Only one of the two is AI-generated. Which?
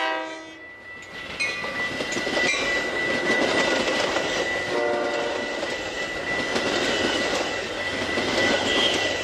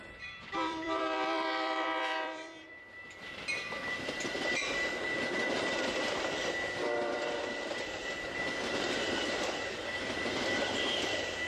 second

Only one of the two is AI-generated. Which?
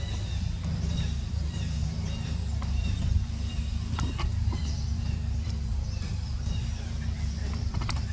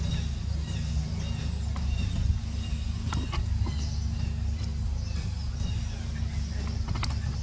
first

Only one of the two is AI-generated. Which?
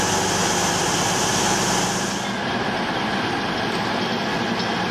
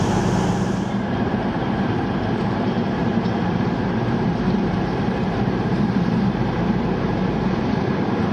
second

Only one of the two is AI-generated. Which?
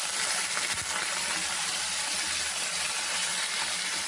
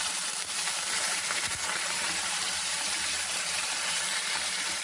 second